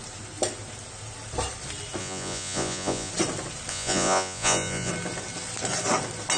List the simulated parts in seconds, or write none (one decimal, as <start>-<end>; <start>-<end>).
2.0-3.1; 3.7-4.9